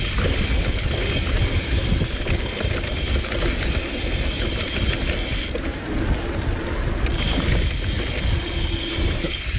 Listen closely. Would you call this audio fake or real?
real